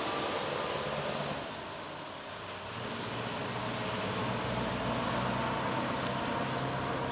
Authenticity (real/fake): real